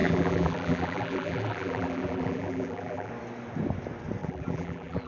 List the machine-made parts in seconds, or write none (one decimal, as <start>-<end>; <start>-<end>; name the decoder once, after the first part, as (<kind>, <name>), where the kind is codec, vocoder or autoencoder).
0.0-3.1 (vocoder, BigVGAN v2); 4.2-5.1